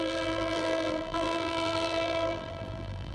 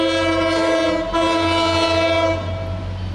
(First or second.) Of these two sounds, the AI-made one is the first